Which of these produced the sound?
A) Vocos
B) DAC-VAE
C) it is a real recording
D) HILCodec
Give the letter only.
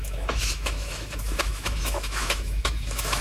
B